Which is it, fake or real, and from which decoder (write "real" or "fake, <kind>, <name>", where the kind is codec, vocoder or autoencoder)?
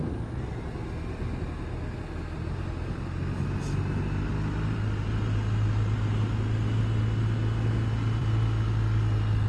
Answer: real